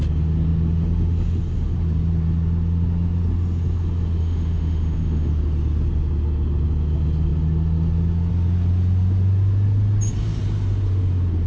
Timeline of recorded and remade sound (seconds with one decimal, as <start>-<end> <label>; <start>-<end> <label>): 0.0-4.2 recorded; 4.2-5.3 remade; 5.3-11.5 recorded

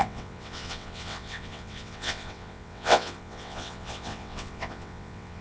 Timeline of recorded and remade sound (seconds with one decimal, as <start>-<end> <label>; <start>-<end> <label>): 0.0-5.4 remade

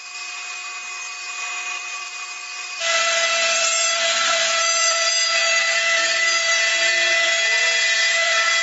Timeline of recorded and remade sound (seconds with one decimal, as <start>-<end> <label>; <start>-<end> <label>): 0.0-0.6 remade; 0.6-1.3 recorded; 1.3-8.6 remade

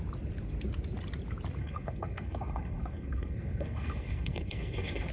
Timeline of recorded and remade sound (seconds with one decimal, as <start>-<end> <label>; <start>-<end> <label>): 0.0-1.6 recorded; 1.6-5.1 remade

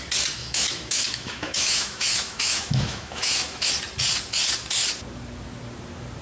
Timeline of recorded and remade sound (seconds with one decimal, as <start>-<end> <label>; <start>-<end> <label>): 0.0-0.4 recorded; 0.4-3.7 remade; 3.7-6.2 recorded

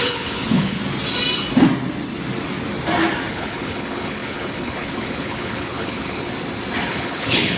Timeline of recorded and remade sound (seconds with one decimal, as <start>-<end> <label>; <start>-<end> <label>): 0.0-0.8 remade; 0.8-3.3 recorded; 3.3-6.3 remade; 6.3-6.9 recorded; 6.9-7.6 remade